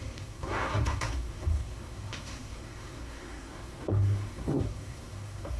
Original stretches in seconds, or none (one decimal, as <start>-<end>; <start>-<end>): none